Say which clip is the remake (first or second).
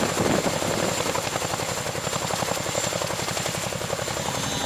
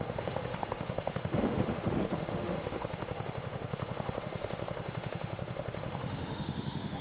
second